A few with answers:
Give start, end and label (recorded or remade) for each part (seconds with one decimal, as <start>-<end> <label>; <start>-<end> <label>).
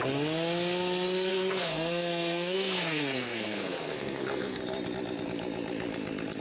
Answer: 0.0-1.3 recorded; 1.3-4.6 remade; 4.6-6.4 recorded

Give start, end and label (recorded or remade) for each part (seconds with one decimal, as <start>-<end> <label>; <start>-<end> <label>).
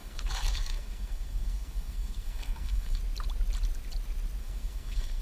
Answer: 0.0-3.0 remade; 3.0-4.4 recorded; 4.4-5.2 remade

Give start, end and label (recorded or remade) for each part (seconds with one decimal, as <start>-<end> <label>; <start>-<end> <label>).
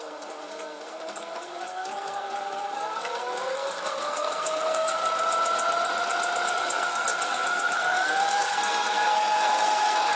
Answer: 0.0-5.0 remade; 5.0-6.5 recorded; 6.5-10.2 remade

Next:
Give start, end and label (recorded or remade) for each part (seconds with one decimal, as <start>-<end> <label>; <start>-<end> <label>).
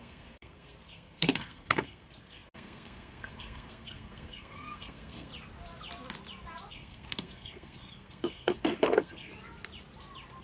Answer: 0.0-5.3 remade; 5.3-6.7 recorded; 6.7-9.3 remade; 9.3-10.4 recorded